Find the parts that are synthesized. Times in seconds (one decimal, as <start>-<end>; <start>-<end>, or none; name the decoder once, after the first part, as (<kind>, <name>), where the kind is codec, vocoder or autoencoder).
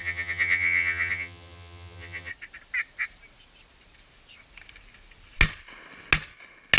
0.0-2.3 (vocoder, HiFi-GAN)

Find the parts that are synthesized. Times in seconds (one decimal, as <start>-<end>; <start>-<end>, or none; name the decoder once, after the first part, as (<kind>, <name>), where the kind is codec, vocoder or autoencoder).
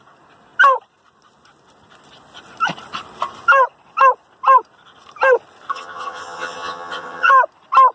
5.7-7.3 (vocoder, HiFi-GAN)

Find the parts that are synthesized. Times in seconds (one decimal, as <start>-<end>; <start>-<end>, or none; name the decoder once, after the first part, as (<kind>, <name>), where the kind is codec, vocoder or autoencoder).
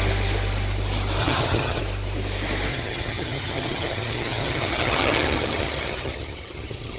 1.2-1.8 (vocoder, HiFi-GAN); 2.7-7.0